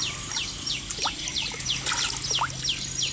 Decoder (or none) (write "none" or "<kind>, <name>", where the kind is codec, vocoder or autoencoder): none